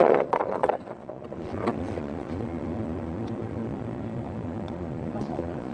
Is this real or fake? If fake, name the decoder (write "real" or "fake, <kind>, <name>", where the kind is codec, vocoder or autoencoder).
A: fake, vocoder, Vocos